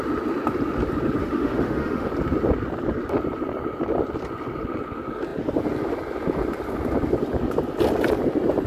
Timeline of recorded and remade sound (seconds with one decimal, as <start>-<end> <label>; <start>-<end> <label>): 0.0-1.2 recorded; 1.2-2.1 remade; 2.1-8.7 recorded